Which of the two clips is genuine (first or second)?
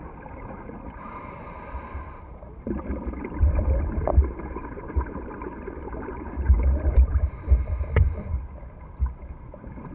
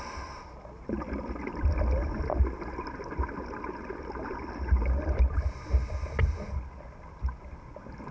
second